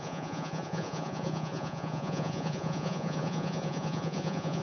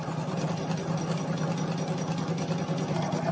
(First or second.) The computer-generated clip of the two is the first